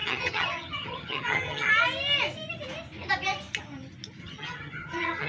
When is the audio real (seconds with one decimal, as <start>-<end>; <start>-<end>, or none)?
1.7-4.2